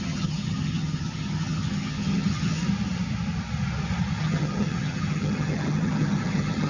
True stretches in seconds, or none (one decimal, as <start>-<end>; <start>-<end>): 2.6-4.2